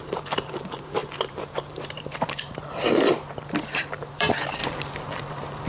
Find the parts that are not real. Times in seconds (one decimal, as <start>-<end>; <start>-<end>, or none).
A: 0.0-5.7